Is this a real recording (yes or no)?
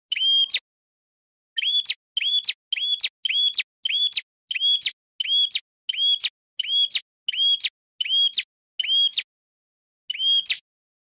yes